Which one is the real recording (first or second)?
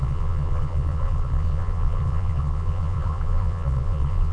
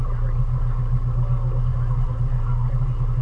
second